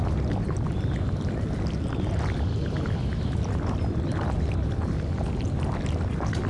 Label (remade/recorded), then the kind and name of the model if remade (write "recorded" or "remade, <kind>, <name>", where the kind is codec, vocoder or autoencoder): recorded